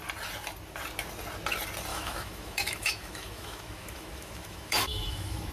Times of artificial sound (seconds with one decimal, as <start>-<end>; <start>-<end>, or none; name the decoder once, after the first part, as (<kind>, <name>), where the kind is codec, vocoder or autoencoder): 1.9-5.5 (autoencoder, DAC-VAE)